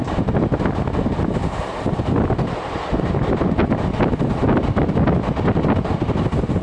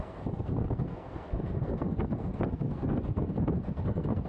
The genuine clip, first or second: first